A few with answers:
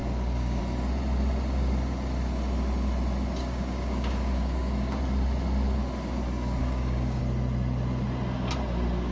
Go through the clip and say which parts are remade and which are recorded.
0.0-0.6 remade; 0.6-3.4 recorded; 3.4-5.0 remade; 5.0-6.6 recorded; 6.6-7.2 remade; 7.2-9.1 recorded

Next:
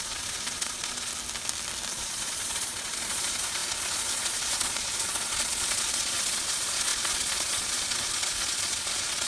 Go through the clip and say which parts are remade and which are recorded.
0.0-1.1 remade; 1.1-1.9 recorded; 1.9-9.3 remade

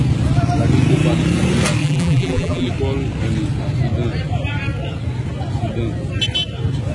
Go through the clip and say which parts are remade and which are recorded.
0.0-1.8 recorded; 1.8-2.7 remade; 2.7-6.9 recorded

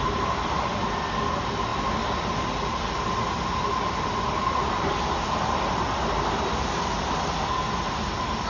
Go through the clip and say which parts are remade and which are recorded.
0.0-8.5 recorded

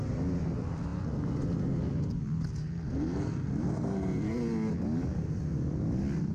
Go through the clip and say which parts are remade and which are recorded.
0.0-2.6 recorded; 2.6-4.4 remade; 4.4-6.3 recorded

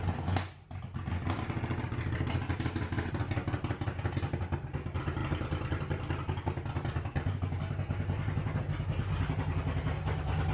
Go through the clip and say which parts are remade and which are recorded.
0.0-10.5 recorded